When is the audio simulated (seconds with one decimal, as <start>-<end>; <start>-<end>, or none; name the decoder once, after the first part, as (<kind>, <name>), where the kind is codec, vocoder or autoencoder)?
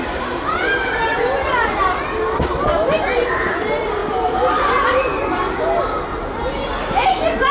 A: none